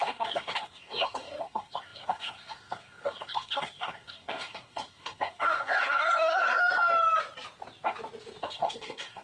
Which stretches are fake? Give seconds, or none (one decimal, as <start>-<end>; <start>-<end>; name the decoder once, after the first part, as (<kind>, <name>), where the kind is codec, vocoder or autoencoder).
0.0-6.6 (codec, SNAC); 8.4-9.2